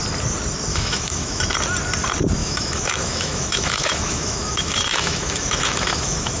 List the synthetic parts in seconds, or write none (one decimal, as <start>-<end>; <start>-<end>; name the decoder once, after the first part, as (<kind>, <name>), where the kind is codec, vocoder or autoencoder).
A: 0.7-1.4 (autoencoder, DAC-VAE); 2.4-6.4

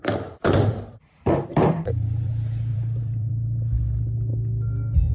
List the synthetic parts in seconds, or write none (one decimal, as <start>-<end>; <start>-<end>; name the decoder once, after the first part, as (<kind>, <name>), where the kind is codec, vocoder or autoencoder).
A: 0.0-2.3 (vocoder, BigVGAN v2); 2.7-3.3

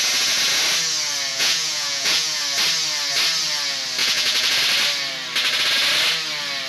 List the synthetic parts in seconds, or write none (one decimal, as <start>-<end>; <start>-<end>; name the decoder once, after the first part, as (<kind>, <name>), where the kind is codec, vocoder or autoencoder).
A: 1.3-2.4 (vocoder, Vocos); 4.0-4.6

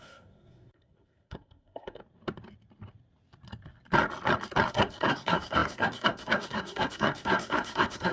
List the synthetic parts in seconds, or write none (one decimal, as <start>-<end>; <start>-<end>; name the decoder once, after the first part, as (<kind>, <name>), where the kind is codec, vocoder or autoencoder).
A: 0.0-2.0 (codec, SNAC); 4.7-8.1

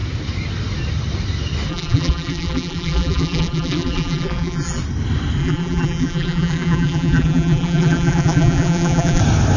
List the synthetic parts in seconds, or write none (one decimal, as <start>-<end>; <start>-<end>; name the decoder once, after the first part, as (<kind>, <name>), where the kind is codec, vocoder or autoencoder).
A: 1.7-4.8 (vocoder, BigVGAN v2); 5.4-9.2